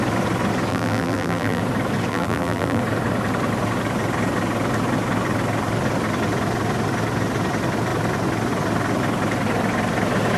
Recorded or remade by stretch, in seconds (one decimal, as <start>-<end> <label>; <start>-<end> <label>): 0.0-0.7 recorded; 0.7-1.6 remade; 1.6-2.1 recorded; 2.1-2.8 remade; 2.8-10.4 recorded